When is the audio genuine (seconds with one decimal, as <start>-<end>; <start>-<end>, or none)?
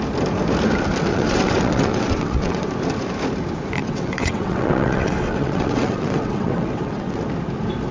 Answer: 0.0-1.1; 2.7-3.8; 7.2-7.9